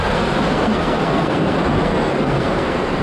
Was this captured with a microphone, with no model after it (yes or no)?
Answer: no